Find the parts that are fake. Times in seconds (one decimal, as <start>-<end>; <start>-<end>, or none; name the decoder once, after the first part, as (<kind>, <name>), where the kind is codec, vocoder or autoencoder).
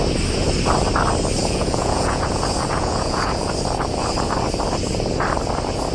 1.4-3.5 (vocoder, Vocos)